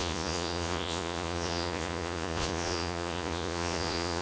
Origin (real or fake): fake